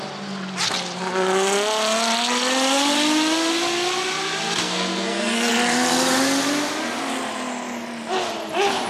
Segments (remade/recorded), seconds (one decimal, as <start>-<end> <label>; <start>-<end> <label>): 0.0-4.6 recorded; 4.6-5.5 remade; 5.5-8.9 recorded